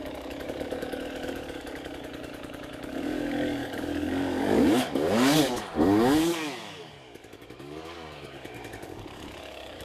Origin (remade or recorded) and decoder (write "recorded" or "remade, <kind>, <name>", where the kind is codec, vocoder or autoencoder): remade, codec, DAC